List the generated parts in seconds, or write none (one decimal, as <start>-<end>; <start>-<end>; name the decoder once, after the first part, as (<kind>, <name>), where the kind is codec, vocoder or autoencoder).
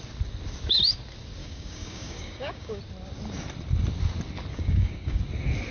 1.4-2.8 (codec, DAC); 4.5-5.2